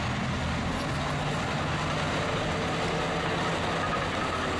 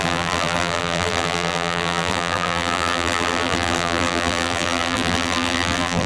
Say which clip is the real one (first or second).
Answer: first